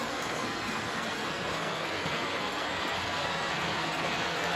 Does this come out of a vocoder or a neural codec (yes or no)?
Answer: yes